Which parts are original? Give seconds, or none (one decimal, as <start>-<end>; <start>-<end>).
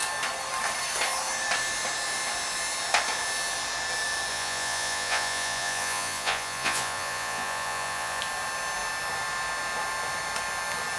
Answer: 0.0-4.3; 8.2-11.0